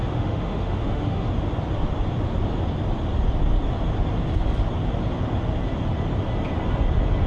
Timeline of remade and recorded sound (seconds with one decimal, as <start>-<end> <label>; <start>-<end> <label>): 0.0-1.3 remade; 1.3-7.3 recorded